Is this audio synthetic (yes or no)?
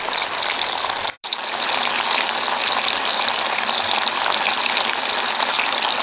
no